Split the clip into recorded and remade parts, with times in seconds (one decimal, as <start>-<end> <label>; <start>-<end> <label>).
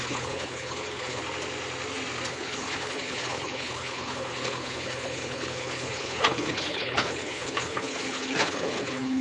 0.0-1.2 remade; 1.2-2.3 recorded; 2.3-9.2 remade